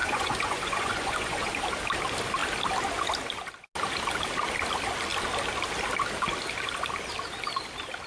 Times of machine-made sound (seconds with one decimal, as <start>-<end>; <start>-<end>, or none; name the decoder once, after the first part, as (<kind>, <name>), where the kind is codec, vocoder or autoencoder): 0.0-1.5 (vocoder, Vocos)